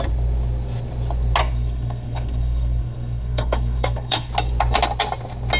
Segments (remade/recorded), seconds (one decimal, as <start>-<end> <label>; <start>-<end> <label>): 0.0-1.4 recorded; 1.4-4.3 remade; 4.3-5.6 recorded